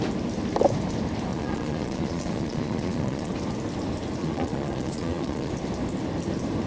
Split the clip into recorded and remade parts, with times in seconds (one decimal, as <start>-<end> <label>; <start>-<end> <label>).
0.0-1.3 recorded; 1.3-3.3 remade; 3.3-4.2 recorded; 4.2-5.5 remade; 5.5-6.7 recorded

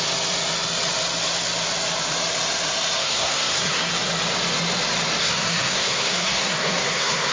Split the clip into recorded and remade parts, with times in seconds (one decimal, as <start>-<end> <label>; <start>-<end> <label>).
0.0-3.0 recorded; 3.0-3.9 remade; 3.9-5.2 recorded; 5.2-7.3 remade

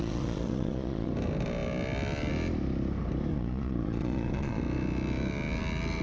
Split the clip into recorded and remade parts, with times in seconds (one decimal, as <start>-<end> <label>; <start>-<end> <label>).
0.0-1.1 remade; 1.1-3.3 recorded; 3.3-4.6 remade; 4.6-6.0 recorded

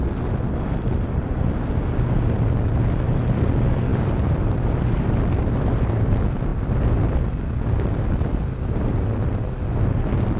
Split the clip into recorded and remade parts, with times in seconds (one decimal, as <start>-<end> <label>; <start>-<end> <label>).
0.0-3.9 recorded; 3.9-5.9 remade; 5.9-10.4 recorded

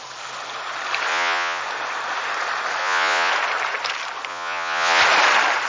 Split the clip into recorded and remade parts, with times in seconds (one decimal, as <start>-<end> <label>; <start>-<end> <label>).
0.0-1.1 recorded; 1.1-1.6 remade; 1.6-2.8 recorded; 2.8-3.3 remade; 3.3-4.3 recorded; 4.3-5.0 remade; 5.0-5.7 recorded

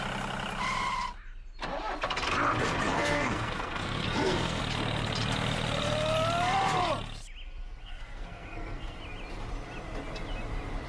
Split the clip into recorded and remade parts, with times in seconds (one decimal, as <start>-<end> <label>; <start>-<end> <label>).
0.0-2.9 recorded; 2.9-4.6 remade; 4.6-7.8 recorded; 7.8-9.0 remade; 9.0-10.9 recorded